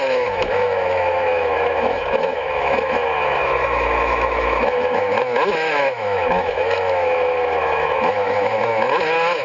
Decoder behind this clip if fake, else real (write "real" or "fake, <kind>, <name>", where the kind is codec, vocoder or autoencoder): fake, autoencoder, DAC-VAE